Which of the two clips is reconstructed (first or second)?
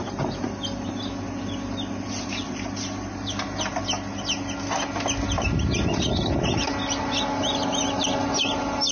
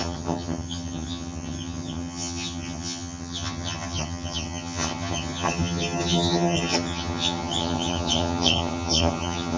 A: second